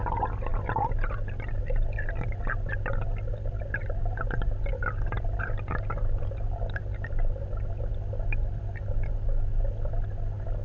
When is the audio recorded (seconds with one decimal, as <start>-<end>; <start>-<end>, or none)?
0.0-10.6